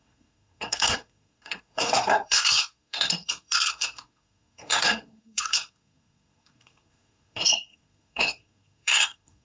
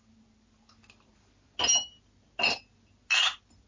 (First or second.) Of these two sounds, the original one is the second